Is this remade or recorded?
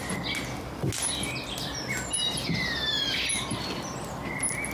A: recorded